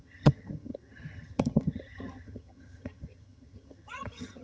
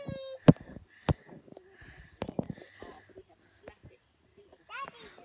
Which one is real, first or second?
second